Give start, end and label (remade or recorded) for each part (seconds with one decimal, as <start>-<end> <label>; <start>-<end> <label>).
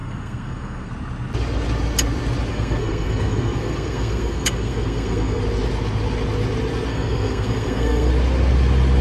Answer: 0.0-0.9 remade; 0.9-2.5 recorded; 2.5-5.4 remade; 5.4-6.9 recorded; 6.9-8.1 remade; 8.1-9.0 recorded